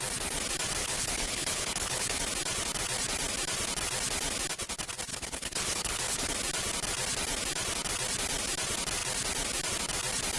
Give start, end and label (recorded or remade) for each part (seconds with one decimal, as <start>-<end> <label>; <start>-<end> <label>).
0.0-0.8 recorded; 0.8-2.2 remade; 2.2-5.1 recorded; 5.1-6.3 remade; 6.3-10.4 recorded